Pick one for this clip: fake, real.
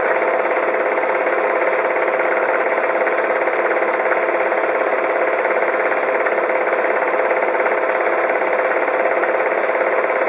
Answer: real